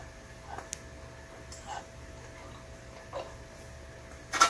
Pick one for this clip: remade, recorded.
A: recorded